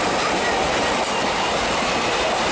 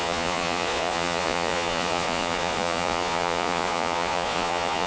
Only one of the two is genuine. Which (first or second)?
first